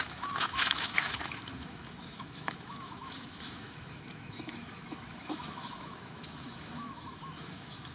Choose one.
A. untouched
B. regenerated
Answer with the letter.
B